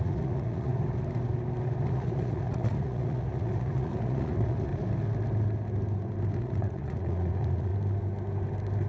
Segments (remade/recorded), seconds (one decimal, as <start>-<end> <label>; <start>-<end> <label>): 0.0-0.7 remade; 0.7-1.9 recorded; 1.9-4.7 remade; 4.7-6.4 recorded; 6.4-7.7 remade; 7.7-8.9 recorded